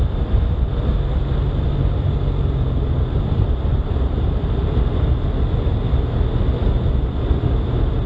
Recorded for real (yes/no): yes